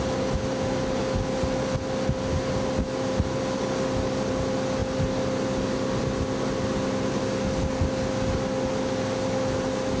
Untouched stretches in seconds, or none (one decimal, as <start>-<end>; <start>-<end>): 0.0-10.0